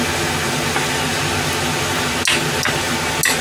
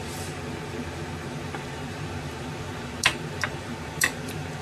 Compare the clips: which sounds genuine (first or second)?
first